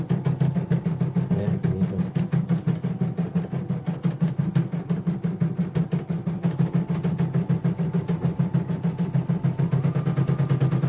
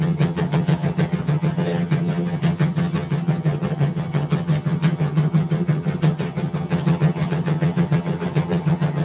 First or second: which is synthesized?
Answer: second